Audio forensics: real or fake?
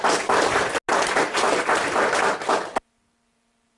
real